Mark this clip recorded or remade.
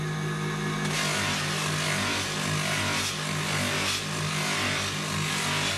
recorded